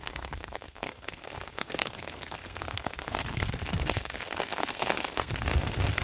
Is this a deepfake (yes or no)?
yes